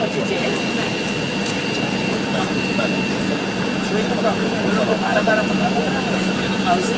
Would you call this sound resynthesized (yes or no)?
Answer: no